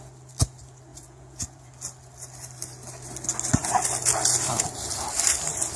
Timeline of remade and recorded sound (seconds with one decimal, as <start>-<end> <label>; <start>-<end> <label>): 0.0-0.9 recorded; 0.9-1.7 remade; 1.7-5.8 recorded